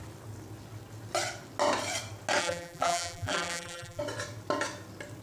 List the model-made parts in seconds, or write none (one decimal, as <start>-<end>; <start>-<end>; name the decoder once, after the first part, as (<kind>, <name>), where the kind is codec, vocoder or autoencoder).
2.4-4.0 (vocoder, BigVGAN v2)